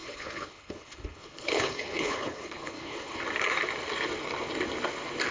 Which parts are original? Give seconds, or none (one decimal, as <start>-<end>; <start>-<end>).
3.2-5.3